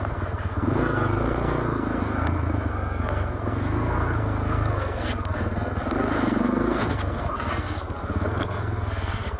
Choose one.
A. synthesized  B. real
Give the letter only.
A